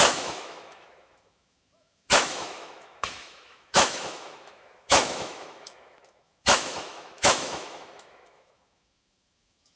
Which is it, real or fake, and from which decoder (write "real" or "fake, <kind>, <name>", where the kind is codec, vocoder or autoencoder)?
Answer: fake, autoencoder, DAC-VAE